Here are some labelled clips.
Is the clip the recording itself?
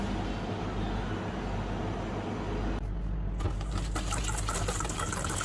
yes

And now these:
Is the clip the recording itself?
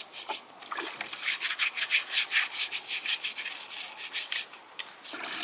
yes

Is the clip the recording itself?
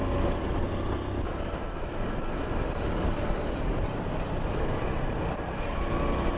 yes